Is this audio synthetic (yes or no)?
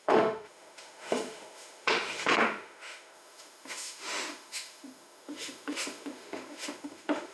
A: yes